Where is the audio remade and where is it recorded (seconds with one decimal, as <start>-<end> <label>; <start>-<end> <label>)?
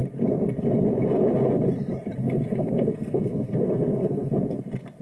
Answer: 0.0-2.2 recorded; 2.2-4.3 remade; 4.3-5.0 recorded